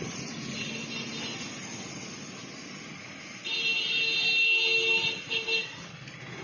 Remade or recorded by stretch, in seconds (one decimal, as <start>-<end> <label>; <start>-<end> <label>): 0.0-6.4 recorded